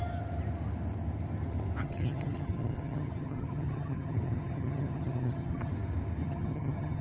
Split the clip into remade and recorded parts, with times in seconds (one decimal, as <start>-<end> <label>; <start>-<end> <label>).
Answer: 0.0-1.8 recorded; 1.8-5.7 remade; 5.7-6.2 recorded; 6.2-7.0 remade